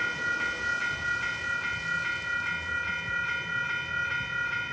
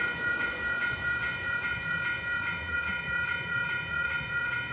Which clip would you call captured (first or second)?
first